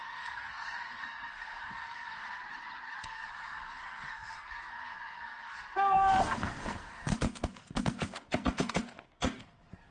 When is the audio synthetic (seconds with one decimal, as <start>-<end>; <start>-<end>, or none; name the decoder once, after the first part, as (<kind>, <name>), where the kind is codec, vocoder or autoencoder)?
0.0-2.4 (codec, SNAC); 3.0-9.9